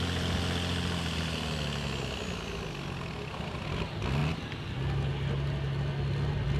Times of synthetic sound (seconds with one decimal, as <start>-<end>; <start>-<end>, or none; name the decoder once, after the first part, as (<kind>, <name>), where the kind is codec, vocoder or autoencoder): none